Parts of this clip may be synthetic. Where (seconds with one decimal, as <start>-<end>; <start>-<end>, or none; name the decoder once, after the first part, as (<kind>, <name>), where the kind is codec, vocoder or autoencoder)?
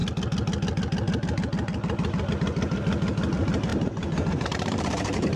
3.7-5.4 (vocoder, BigVGAN v2)